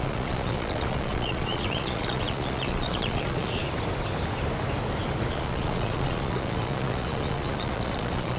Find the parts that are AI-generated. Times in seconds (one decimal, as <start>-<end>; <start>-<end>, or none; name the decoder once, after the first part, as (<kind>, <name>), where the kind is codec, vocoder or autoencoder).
0.0-3.6 (vocoder, Vocos); 5.3-8.4